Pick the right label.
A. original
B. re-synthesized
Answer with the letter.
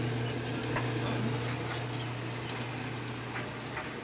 A